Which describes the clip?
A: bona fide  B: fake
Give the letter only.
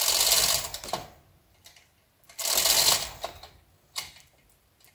A